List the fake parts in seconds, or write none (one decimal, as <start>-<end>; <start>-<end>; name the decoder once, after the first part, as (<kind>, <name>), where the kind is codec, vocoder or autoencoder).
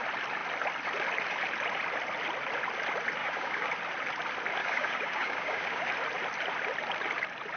3.2-3.7 (codec, DAC); 4.6-5.9